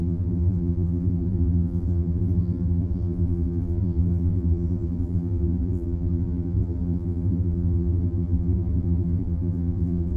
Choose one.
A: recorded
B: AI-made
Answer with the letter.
B